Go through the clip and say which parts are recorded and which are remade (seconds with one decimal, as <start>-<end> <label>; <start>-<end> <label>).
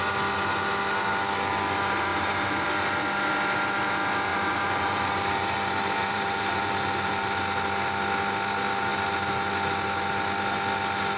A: 0.0-2.1 recorded; 2.1-2.7 remade; 2.7-4.3 recorded; 4.3-7.4 remade; 7.4-11.2 recorded